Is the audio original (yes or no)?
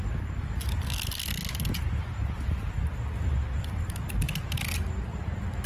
yes